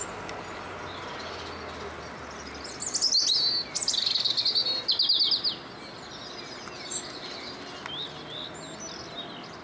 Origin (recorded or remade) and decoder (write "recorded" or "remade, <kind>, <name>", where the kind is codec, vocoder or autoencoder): recorded